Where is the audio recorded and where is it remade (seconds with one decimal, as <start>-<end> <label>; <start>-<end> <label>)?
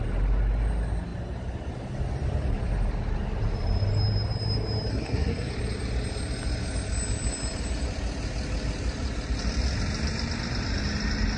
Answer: 0.0-4.9 recorded; 4.9-5.5 remade; 5.5-11.4 recorded